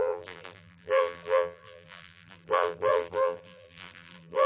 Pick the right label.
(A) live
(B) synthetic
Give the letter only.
B